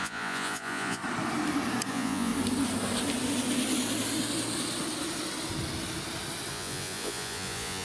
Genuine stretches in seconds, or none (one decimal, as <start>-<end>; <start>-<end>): 1.0-1.9; 2.3-6.5